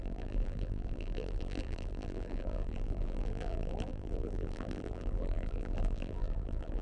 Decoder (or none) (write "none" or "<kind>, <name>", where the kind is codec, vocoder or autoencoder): vocoder, BigVGAN v2